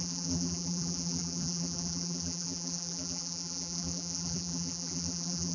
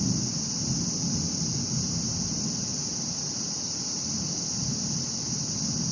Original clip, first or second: second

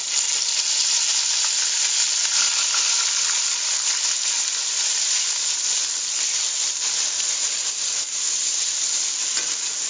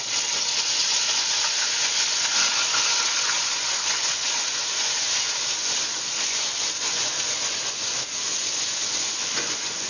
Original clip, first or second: first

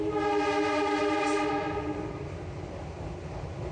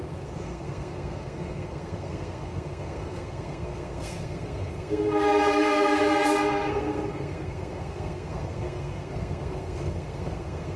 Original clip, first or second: first